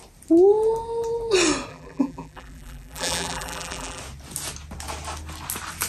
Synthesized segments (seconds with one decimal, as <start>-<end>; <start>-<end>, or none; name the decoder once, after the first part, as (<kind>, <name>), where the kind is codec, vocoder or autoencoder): 1.7-4.0 (vocoder, BigVGAN v2)